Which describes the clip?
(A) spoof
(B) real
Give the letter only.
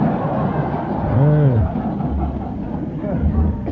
B